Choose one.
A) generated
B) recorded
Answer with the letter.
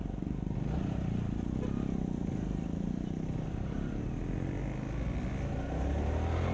B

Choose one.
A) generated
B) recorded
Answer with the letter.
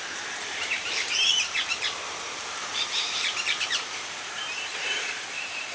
A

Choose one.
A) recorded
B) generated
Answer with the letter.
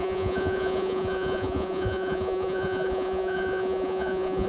B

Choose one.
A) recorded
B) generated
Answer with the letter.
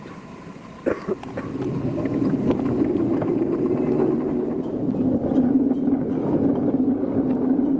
A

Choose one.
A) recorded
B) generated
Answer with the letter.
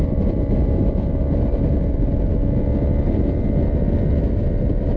A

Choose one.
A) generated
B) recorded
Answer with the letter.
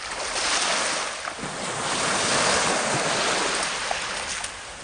B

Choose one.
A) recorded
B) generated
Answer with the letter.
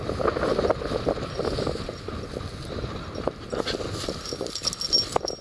A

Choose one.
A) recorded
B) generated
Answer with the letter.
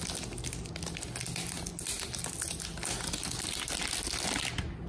A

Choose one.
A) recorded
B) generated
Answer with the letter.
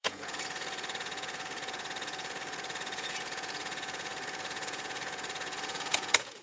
B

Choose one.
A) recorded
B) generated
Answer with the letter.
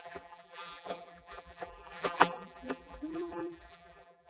B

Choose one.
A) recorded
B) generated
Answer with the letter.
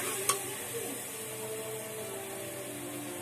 A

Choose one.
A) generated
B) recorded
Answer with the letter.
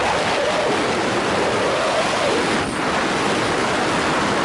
B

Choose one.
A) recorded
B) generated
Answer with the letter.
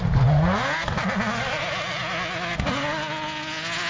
A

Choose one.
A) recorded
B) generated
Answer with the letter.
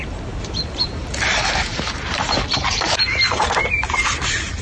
B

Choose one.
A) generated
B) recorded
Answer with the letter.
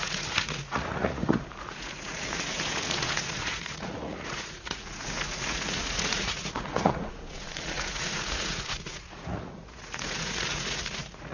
A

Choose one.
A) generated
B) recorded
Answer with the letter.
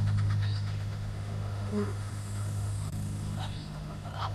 A